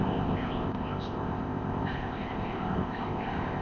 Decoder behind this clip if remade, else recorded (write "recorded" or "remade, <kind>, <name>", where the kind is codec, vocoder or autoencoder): remade, codec, ZipCodec